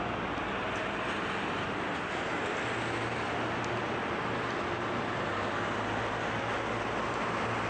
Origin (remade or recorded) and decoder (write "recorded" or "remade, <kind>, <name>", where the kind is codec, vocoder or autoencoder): recorded